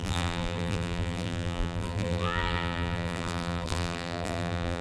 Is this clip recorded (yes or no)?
no